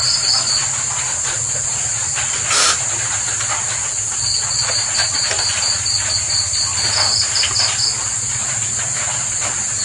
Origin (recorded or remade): recorded